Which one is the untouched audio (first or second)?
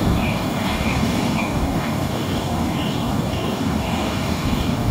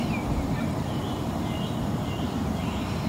second